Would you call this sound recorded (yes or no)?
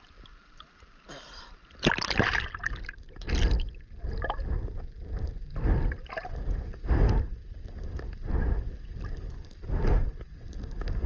yes